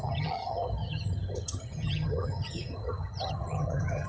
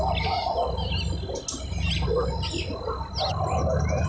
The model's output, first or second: first